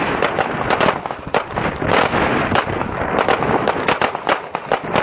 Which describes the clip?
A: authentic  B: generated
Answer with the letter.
A